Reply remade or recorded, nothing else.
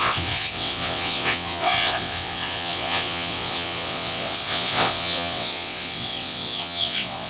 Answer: remade